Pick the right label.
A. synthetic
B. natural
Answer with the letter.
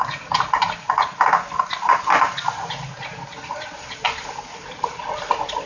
B